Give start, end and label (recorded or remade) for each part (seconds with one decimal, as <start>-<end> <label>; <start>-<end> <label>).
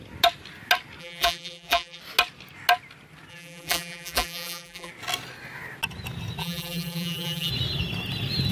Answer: 0.0-1.0 recorded; 1.0-2.0 remade; 2.0-3.3 recorded; 3.3-4.9 remade; 4.9-6.4 recorded; 6.4-7.5 remade; 7.5-8.5 recorded